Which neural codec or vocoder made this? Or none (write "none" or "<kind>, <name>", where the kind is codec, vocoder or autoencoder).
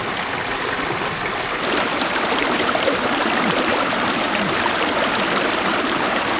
vocoder, BigVGAN v2